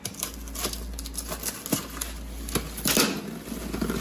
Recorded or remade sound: recorded